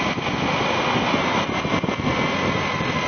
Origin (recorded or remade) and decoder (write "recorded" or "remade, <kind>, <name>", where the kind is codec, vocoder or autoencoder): recorded